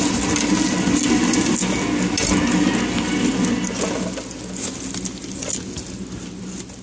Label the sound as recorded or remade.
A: recorded